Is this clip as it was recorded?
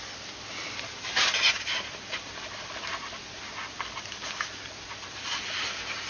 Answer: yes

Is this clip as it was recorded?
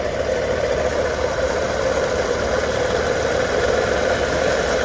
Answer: yes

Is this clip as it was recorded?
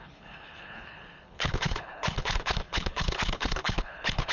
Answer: no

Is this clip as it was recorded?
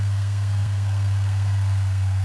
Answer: no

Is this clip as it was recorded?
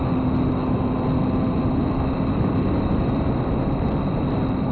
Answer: yes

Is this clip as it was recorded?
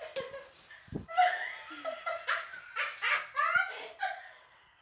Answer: yes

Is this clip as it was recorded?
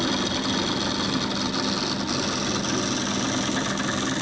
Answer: yes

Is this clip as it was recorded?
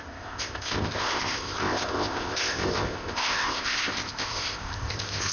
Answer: no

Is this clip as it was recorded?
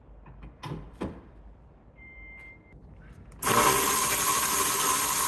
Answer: yes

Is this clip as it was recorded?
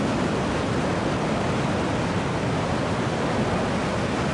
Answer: yes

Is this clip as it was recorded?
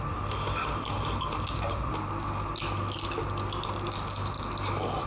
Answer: yes